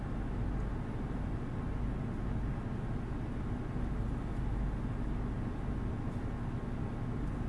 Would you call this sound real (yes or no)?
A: yes